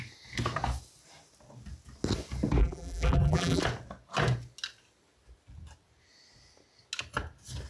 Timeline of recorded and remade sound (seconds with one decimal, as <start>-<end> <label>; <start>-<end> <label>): 0.0-2.6 recorded; 2.6-3.6 remade; 3.6-7.7 recorded